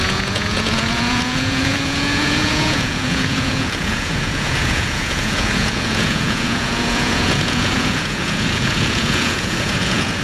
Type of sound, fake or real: fake